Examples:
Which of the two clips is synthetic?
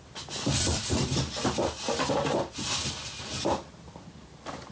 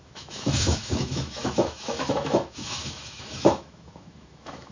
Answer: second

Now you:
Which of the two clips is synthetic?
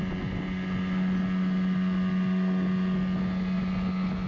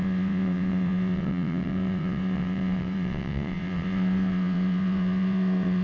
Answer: second